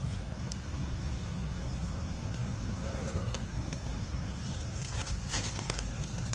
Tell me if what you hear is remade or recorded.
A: remade